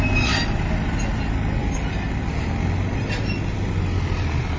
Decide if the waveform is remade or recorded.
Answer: recorded